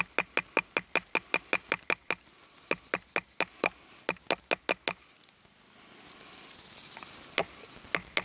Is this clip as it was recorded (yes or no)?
yes